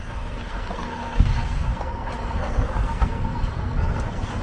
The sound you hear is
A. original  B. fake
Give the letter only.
B